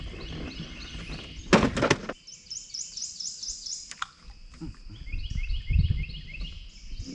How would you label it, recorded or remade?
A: recorded